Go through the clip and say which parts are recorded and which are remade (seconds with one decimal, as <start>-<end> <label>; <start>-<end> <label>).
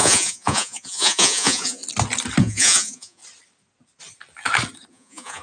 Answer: 0.0-1.8 remade; 1.8-2.4 recorded; 2.4-3.2 remade; 3.2-4.9 recorded; 4.9-5.4 remade